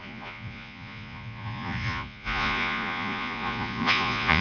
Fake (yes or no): yes